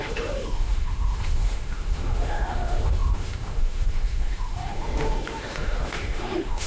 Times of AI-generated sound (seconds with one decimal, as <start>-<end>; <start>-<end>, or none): 0.0-6.7